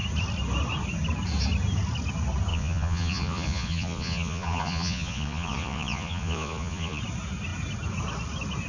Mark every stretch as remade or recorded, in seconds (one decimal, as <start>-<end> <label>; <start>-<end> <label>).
0.0-2.5 recorded; 2.5-7.0 remade; 7.0-8.7 recorded